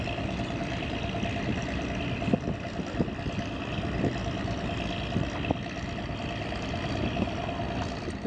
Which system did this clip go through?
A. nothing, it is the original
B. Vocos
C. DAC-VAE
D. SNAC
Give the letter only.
A